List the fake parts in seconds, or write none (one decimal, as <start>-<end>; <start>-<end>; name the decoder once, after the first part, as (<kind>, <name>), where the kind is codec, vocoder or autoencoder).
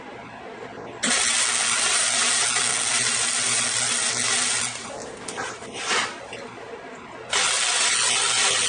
none